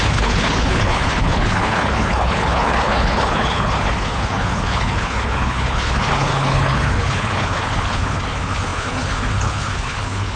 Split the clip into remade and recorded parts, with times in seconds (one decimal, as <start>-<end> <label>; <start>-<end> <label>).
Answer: 0.0-10.4 remade